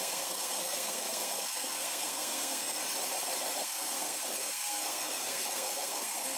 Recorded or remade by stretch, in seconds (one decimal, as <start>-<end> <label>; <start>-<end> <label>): 0.0-2.8 remade; 2.8-3.6 recorded; 3.6-6.4 remade